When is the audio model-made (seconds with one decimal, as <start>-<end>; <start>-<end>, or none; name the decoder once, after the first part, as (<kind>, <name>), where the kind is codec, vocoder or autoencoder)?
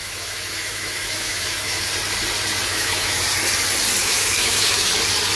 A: 0.0-1.9 (autoencoder, DAC-VAE); 2.7-3.2; 4.0-4.9